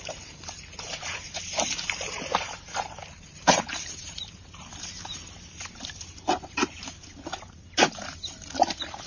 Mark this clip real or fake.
fake